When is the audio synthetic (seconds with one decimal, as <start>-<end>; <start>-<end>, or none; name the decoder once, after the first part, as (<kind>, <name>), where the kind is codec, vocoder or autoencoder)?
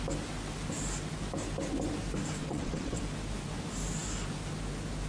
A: 2.4-3.0 (vocoder, WaveNeXt)